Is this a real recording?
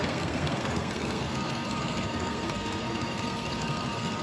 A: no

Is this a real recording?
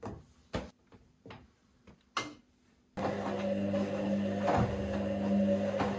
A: yes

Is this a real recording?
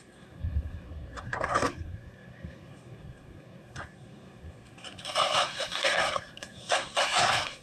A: no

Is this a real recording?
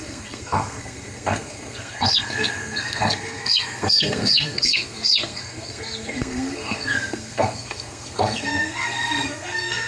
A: no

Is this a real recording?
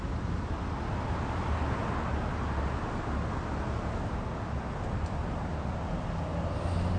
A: yes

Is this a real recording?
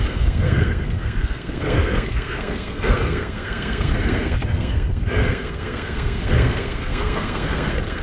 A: no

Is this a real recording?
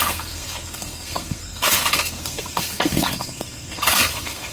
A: no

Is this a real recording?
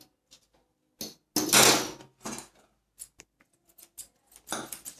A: yes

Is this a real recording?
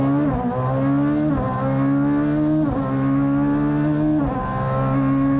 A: yes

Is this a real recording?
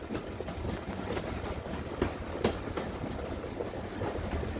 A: yes